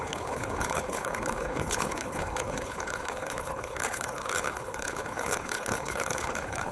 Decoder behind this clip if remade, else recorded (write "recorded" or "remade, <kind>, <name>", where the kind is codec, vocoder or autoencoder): remade, codec, HILCodec